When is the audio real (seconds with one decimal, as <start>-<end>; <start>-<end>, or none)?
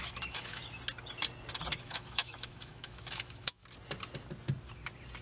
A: 0.6-1.8; 3.6-5.2